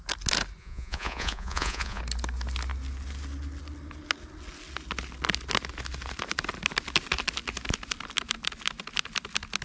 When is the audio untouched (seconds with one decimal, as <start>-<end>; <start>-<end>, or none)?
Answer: 0.0-0.6; 2.0-9.6